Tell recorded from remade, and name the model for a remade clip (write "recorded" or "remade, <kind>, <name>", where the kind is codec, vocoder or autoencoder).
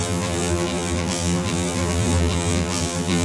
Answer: remade, vocoder, BigVGAN v2